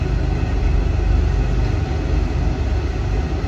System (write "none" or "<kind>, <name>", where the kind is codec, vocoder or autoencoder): none